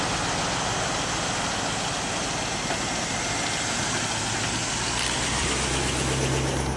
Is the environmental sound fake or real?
real